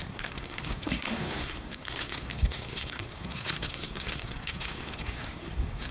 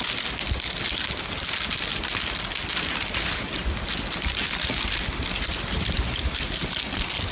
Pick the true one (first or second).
second